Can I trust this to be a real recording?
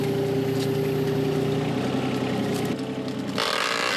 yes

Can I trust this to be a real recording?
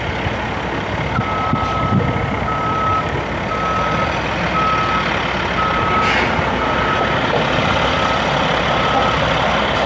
yes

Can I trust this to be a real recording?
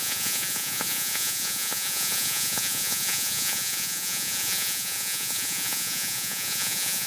no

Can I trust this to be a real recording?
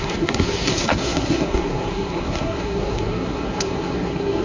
no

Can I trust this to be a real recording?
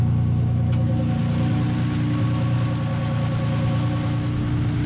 yes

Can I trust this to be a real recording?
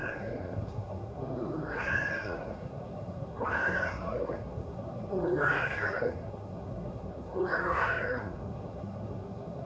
no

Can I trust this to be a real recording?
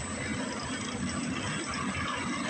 yes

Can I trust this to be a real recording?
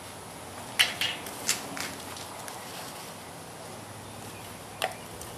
yes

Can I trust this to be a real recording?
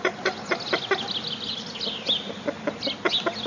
yes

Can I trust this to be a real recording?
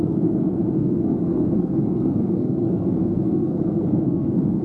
no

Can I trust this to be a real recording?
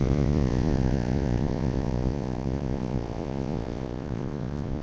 no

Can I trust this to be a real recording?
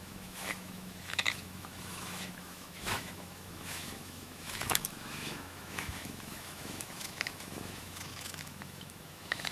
no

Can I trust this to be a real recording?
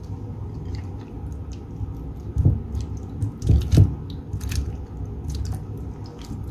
yes